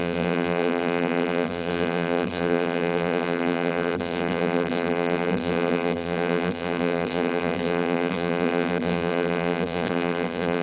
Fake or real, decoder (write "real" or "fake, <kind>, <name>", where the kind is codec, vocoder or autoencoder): fake, vocoder, BigVGAN v2